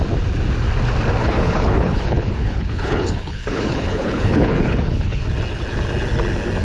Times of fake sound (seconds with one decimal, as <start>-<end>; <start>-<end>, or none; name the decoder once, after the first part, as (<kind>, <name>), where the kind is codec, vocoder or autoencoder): 1.2-5.2 (codec, HILCodec)